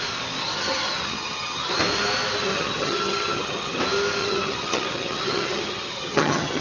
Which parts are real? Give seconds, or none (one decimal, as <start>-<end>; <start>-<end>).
0.0-0.4; 1.8-2.5; 3.8-4.2